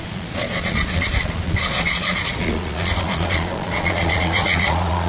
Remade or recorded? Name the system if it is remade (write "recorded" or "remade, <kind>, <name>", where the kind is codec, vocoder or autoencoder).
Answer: remade, vocoder, Vocos